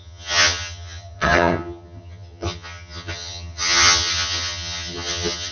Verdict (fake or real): fake